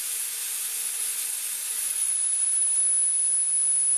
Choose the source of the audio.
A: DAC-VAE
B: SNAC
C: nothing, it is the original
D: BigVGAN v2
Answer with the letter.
C